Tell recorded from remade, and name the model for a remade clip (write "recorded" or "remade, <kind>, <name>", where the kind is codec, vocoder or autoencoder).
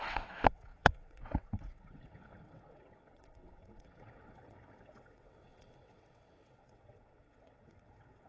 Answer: remade, vocoder, WaveNeXt